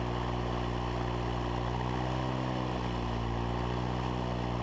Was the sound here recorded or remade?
recorded